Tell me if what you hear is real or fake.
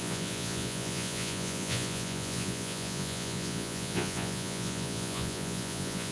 fake